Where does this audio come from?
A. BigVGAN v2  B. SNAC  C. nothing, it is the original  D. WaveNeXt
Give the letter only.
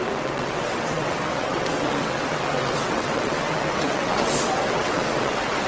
D